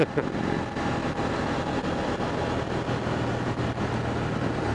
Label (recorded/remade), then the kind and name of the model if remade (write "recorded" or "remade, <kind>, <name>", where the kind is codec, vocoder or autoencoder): recorded